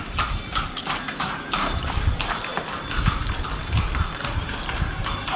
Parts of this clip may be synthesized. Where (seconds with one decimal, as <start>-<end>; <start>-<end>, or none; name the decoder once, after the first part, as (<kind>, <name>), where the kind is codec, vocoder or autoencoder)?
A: 3.6-4.5 (vocoder, BigVGAN v2)